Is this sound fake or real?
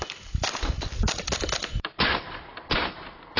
real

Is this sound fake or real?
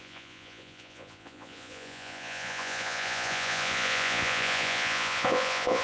fake